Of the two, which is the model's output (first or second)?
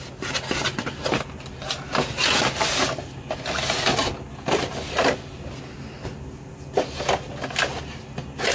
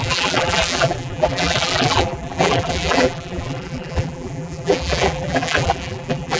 second